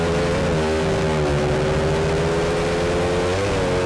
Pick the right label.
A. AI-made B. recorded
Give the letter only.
B